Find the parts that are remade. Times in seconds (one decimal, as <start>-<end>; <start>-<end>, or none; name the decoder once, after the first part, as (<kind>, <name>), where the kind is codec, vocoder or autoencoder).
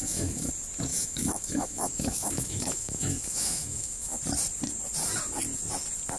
0.0-0.5 (autoencoder, DAC-VAE); 0.9-4.2